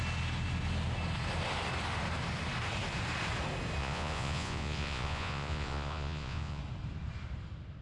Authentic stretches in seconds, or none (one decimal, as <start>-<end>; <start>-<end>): 0.0-3.8; 6.6-7.8